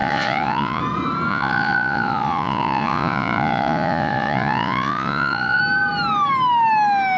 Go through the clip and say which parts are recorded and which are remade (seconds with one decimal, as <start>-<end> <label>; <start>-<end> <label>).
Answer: 0.0-0.8 remade; 0.8-1.3 recorded; 1.3-5.6 remade; 5.6-7.2 recorded